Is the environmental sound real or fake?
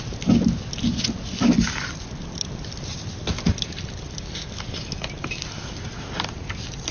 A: real